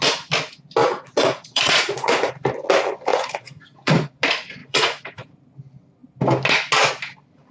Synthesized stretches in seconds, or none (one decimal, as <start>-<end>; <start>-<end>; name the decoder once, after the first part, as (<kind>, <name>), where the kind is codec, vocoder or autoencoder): 0.8-2.3 (vocoder, Vocos); 3.1-4.1; 4.6-5.3